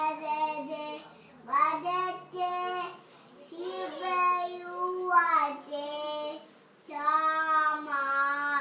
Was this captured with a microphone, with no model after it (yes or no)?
yes